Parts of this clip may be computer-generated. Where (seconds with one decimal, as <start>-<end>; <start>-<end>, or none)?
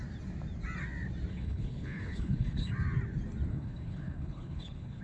1.3-2.7; 3.5-5.0